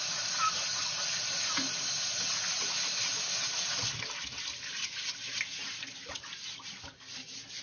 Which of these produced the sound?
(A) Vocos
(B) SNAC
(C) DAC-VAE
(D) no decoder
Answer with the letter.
D